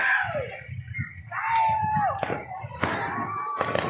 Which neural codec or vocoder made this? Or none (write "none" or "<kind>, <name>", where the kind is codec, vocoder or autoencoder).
none